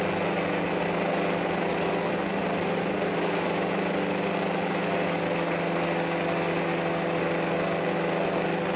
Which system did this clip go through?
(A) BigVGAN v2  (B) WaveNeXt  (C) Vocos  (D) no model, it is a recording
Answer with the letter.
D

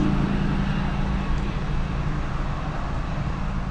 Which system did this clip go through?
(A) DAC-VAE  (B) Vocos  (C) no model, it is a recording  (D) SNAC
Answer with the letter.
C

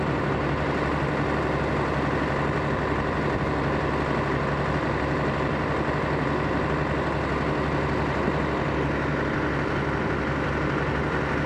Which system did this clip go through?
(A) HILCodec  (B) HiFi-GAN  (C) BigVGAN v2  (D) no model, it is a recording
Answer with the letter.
D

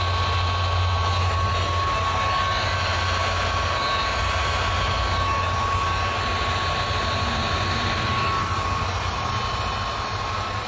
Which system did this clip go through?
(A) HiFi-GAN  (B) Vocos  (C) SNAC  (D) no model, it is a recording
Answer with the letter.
D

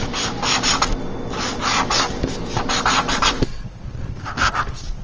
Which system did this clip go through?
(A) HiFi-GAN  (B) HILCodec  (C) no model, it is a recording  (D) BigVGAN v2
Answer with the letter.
C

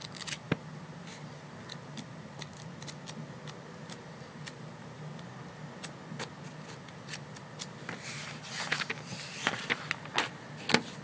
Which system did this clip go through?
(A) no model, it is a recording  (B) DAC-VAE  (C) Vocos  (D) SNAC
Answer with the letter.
A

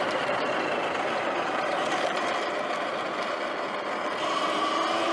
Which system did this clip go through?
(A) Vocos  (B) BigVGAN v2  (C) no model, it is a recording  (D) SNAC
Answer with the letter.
C